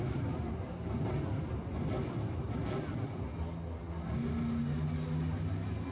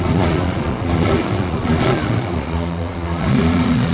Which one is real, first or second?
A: first